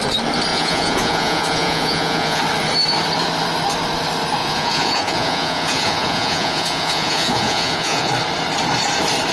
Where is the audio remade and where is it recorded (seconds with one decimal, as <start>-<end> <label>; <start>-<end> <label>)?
0.0-0.5 recorded; 0.5-2.4 remade; 2.4-4.4 recorded; 4.4-8.1 remade; 8.1-9.3 recorded